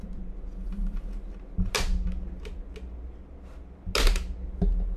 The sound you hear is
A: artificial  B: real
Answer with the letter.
B